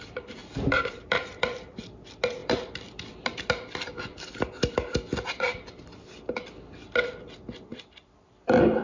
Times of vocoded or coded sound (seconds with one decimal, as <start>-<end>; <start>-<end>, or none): 0.4-1.8; 2.4-3.5; 7.7-8.8